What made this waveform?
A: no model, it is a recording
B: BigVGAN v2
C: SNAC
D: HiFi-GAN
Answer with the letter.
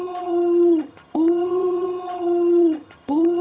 D